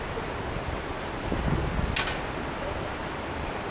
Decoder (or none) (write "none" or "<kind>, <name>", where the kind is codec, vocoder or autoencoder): none